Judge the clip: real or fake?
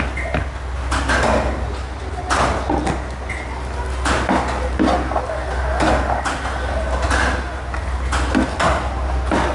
real